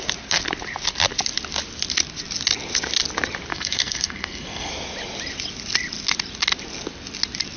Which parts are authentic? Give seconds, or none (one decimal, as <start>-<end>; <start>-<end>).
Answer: 0.0-3.5; 4.7-7.6